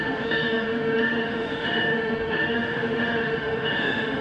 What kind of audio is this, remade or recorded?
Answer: remade